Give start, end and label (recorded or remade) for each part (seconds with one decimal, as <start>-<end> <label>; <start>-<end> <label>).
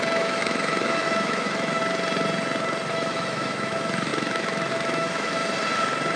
0.0-1.8 remade; 1.8-2.9 recorded; 2.9-5.4 remade; 5.4-6.2 recorded